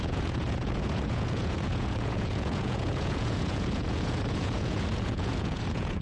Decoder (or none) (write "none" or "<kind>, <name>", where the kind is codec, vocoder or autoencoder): vocoder, Vocos